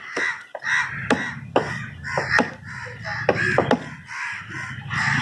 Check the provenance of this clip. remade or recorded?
recorded